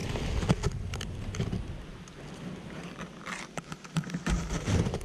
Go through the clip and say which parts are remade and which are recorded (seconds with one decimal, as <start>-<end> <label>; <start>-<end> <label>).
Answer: 0.0-3.0 remade; 3.0-5.0 recorded